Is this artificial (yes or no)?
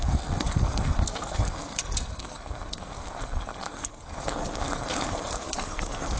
yes